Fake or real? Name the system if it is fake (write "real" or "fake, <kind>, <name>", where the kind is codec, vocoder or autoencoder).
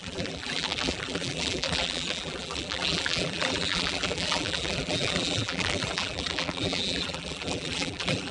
fake, vocoder, BigVGAN v2